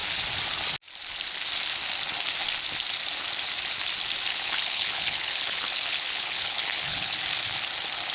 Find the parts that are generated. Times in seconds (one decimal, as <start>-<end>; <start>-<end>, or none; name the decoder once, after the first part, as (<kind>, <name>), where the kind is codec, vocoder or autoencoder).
4.3-7.2 (codec, HILCodec)